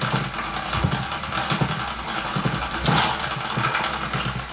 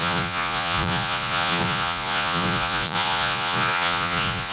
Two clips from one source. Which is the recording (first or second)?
first